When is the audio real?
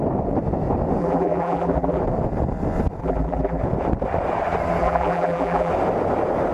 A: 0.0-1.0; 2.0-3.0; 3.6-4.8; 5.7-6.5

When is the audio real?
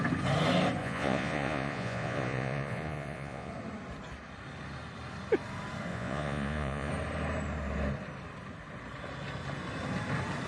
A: 0.0-0.8; 3.5-5.9; 6.9-10.5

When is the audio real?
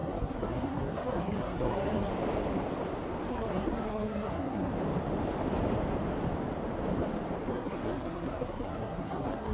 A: 2.1-3.3; 4.7-7.5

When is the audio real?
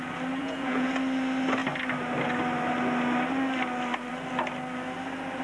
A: 0.0-0.4; 0.9-5.4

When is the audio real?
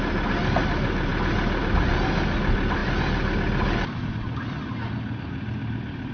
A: 0.0-6.1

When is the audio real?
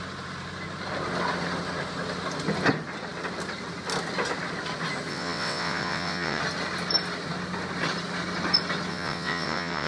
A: 0.0-5.1; 6.4-8.9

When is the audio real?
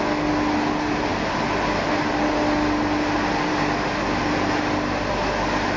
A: 0.0-5.8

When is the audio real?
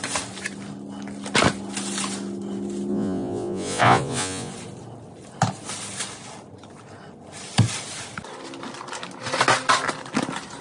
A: 0.0-2.9; 4.5-10.6